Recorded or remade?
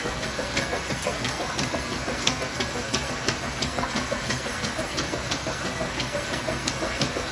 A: remade